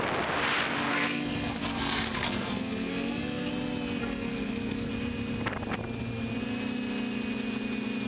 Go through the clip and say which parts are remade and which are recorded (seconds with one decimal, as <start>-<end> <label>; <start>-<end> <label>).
0.0-0.9 recorded; 0.9-3.5 remade; 3.5-4.0 recorded; 4.0-4.9 remade; 4.9-8.1 recorded